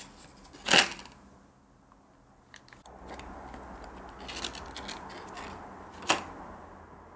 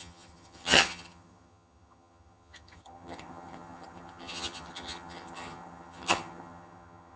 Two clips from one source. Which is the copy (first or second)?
second